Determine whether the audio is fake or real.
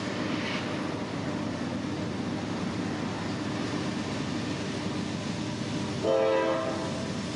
real